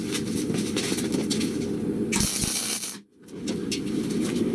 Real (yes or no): yes